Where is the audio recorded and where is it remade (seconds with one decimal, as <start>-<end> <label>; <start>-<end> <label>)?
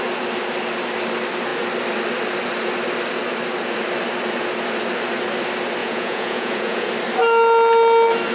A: 0.0-5.8 recorded; 5.8-6.9 remade; 6.9-8.3 recorded